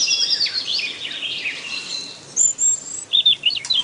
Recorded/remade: recorded